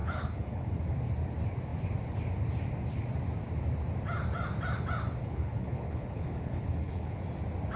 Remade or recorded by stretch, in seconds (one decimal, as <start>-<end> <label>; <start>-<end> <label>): 0.0-0.8 remade; 0.8-5.2 recorded; 5.2-7.2 remade; 7.2-7.8 recorded